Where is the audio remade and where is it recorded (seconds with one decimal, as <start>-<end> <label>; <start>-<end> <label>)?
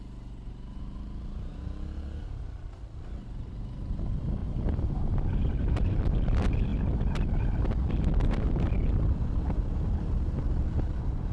0.0-4.4 recorded; 4.4-6.0 remade; 6.0-11.3 recorded